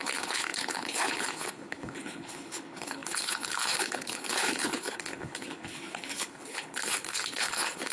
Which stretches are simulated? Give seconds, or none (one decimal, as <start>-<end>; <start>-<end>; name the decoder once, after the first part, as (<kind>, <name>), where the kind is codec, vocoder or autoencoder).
0.0-7.9 (codec, HILCodec)